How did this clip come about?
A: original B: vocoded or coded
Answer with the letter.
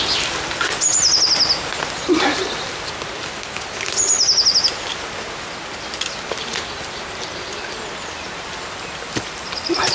A